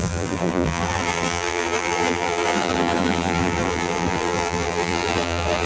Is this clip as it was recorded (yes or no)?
no